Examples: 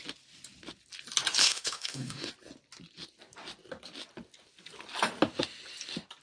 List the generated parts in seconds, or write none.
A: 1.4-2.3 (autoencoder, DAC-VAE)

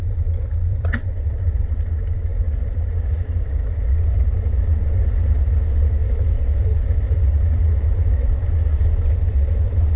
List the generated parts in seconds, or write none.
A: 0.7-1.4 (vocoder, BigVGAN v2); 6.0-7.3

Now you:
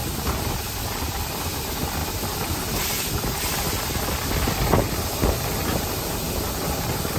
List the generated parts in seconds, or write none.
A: 0.0-1.3 (vocoder, BigVGAN v2)